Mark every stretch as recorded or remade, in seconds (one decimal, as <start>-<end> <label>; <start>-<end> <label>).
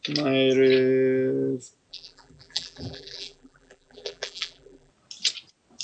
0.0-1.9 recorded; 1.9-4.9 remade; 4.9-5.8 recorded